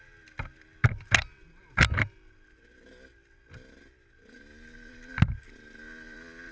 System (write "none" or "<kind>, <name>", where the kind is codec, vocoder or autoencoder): none